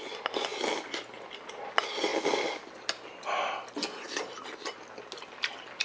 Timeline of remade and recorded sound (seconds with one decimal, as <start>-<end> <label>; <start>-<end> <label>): 0.0-5.8 recorded